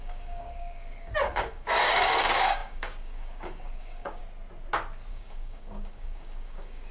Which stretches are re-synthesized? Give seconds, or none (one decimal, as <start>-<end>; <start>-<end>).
0.0-4.2; 5.1-6.9